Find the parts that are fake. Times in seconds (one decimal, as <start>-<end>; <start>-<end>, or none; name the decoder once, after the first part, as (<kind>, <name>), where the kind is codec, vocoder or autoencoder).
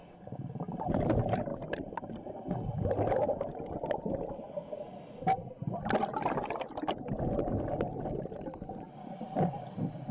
none